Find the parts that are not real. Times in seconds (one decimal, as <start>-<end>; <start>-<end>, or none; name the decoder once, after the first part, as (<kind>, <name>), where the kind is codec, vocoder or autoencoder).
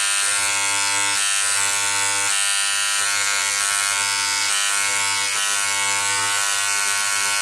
none